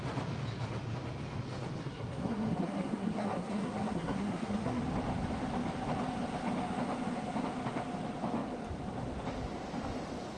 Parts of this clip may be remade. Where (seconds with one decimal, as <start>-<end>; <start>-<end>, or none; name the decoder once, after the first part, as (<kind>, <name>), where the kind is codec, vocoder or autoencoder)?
1.8-4.8 (codec, SNAC)